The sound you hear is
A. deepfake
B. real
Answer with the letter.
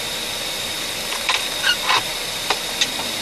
B